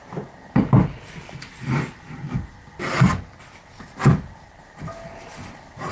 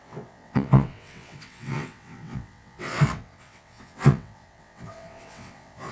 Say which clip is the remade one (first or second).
second